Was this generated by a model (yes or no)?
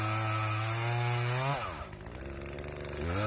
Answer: no